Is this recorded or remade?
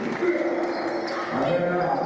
recorded